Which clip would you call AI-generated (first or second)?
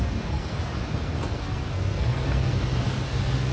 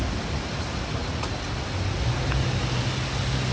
first